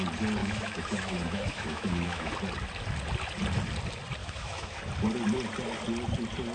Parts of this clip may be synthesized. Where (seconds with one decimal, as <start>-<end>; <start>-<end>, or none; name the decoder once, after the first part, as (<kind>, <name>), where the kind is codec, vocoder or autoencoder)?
0.4-2.3 (autoencoder, DAC-VAE); 4.2-4.8